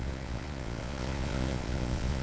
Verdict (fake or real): fake